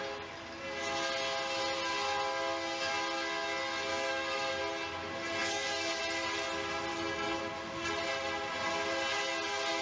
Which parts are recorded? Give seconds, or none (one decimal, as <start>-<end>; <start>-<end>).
0.0-3.9; 4.6-5.4; 6.0-6.9; 7.4-9.8